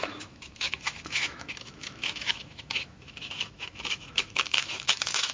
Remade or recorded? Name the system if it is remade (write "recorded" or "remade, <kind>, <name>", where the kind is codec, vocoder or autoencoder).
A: remade, autoencoder, DAC-VAE